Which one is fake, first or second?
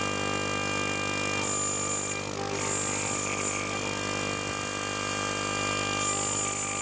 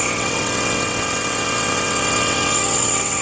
second